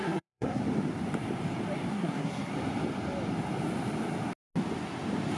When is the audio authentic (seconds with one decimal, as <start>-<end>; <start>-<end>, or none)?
0.6-1.9; 2.5-5.4